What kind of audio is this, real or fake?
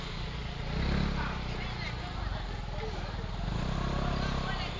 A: real